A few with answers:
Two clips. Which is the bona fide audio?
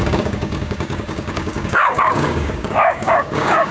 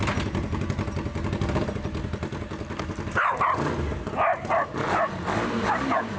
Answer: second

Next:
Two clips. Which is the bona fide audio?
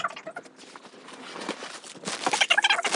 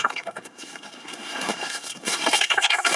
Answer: first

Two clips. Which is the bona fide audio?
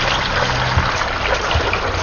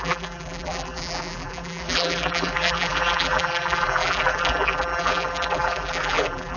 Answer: first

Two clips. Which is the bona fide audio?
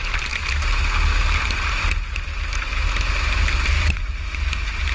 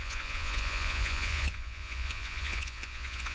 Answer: first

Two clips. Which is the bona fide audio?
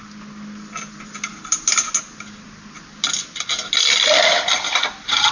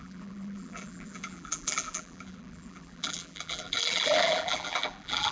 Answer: first